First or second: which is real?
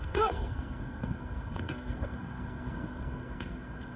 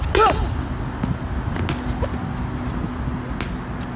second